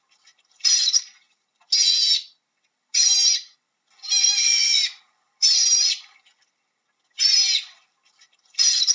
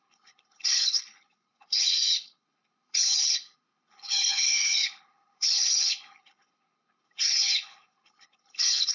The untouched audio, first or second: first